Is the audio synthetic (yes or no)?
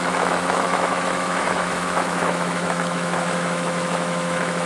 yes